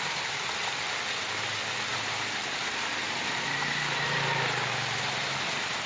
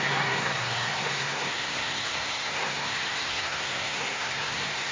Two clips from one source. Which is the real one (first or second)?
first